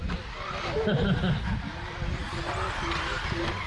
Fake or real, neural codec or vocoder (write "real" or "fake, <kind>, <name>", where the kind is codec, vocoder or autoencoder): real